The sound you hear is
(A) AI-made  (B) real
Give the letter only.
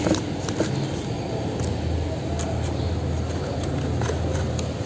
B